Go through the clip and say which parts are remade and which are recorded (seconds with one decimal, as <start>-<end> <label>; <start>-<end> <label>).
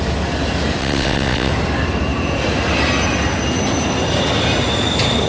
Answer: 0.0-0.8 recorded; 0.8-1.5 remade; 1.5-5.3 recorded